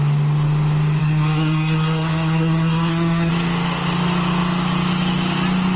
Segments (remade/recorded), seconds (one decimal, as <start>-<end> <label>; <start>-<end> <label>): 0.0-1.0 recorded; 1.0-3.3 remade; 3.3-5.8 recorded